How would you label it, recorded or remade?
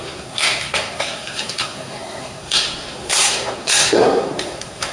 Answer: remade